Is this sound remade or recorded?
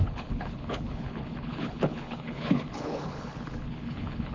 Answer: remade